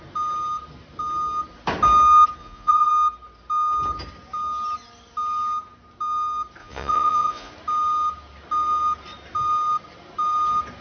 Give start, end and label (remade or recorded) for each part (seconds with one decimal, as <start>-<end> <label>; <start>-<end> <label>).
0.0-2.4 recorded; 2.4-2.9 remade; 2.9-6.6 recorded; 6.6-7.5 remade; 7.5-10.8 recorded